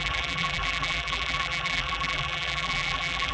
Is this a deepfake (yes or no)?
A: yes